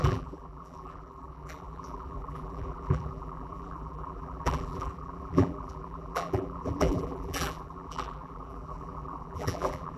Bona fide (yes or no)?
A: no